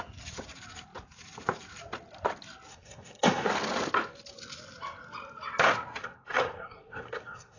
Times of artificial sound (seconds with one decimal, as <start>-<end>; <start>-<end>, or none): 2.7-3.5; 6.0-7.6